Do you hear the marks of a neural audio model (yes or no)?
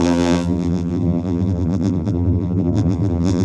yes